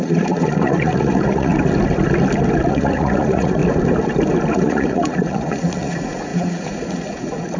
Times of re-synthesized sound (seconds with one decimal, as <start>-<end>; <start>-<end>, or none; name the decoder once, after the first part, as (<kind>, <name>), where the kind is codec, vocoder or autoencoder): 0.0-1.5 (vocoder, Vocos); 2.7-3.6; 4.5-7.6